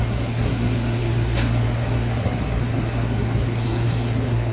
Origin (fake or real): fake